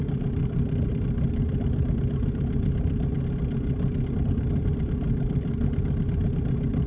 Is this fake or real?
real